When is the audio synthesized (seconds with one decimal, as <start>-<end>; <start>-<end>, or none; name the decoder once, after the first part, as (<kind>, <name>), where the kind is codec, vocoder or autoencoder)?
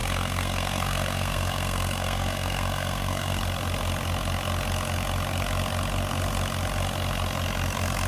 0.0-3.4 (codec, SNAC)